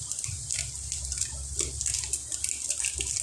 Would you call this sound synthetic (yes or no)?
no